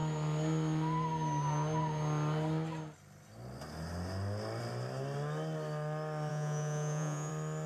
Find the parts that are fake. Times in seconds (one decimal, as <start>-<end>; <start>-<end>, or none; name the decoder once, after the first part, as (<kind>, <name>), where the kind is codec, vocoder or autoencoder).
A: 6.3-7.3 (vocoder, Vocos)